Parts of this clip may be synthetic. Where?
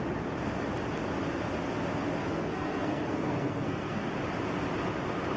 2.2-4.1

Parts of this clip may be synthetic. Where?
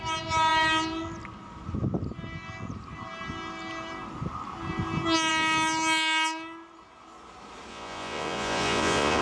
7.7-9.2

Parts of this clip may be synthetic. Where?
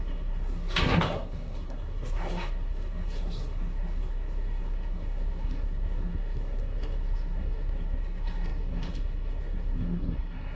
0.0-10.6